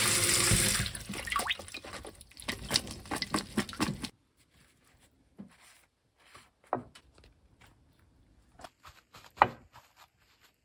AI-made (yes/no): no